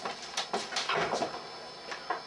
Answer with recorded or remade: recorded